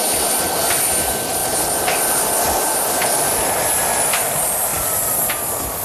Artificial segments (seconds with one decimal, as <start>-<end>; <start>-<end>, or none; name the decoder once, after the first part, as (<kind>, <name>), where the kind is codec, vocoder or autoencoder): 4.7-5.2 (vocoder, BigVGAN v2)